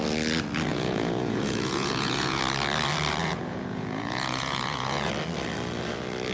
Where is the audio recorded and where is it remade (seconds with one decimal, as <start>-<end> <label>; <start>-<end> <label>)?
0.0-0.7 recorded; 0.7-2.4 remade; 2.4-3.2 recorded; 3.2-5.1 remade; 5.1-6.3 recorded